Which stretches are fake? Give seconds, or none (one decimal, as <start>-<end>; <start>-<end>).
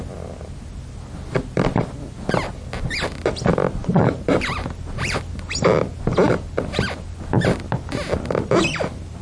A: 3.8-5.3